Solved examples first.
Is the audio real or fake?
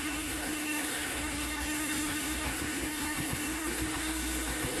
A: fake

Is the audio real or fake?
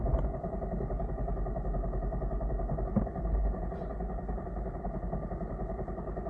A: real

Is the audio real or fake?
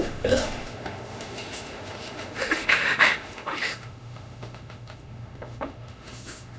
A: fake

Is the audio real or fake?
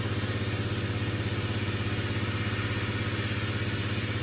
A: real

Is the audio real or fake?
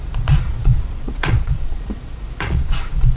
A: fake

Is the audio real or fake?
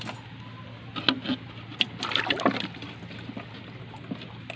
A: real